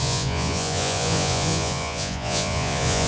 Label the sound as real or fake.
fake